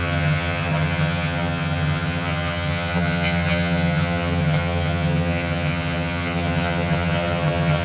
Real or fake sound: fake